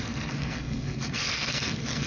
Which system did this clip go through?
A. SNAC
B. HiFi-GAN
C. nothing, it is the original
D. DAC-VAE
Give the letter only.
A